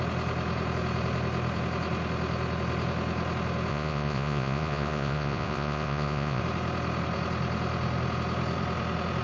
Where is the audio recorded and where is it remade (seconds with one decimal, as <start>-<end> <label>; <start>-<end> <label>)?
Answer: 0.0-3.7 recorded; 3.7-6.4 remade; 6.4-9.2 recorded